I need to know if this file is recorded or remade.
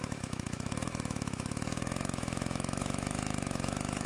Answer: remade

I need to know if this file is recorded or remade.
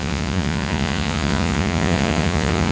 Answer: remade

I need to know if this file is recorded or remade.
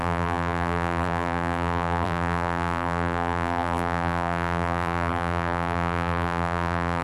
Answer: remade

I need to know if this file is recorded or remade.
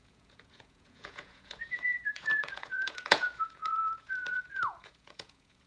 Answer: remade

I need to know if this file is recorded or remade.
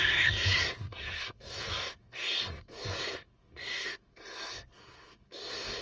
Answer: remade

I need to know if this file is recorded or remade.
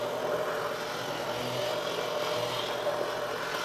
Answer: recorded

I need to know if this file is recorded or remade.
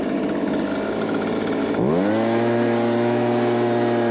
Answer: recorded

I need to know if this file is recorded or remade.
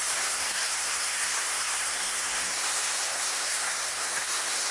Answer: remade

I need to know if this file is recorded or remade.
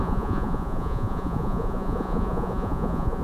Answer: remade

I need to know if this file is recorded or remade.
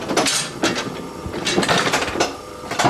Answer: recorded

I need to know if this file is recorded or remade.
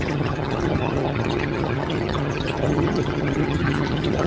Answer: remade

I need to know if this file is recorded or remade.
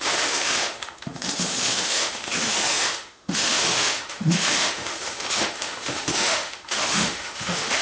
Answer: remade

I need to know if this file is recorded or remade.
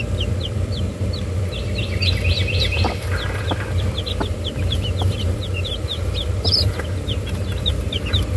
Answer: remade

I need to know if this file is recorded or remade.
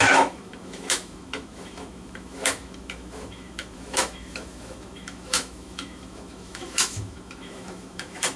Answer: remade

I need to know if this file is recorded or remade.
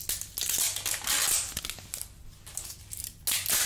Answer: recorded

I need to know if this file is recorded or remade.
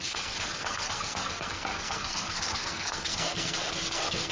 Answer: remade